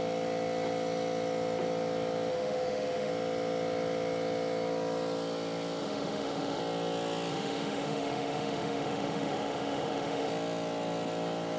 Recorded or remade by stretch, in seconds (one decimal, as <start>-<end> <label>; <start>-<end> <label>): 0.0-2.3 recorded; 2.3-3.1 remade; 3.1-5.8 recorded; 5.8-6.6 remade; 6.6-7.3 recorded; 7.3-10.3 remade; 10.3-11.6 recorded